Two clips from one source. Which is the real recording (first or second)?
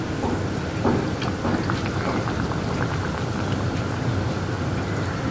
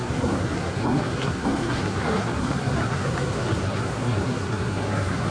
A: first